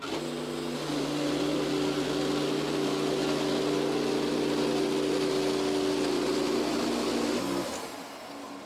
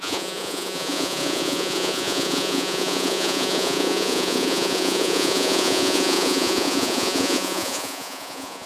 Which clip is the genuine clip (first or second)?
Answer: first